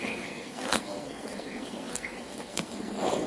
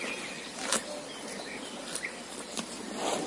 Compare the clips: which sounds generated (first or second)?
first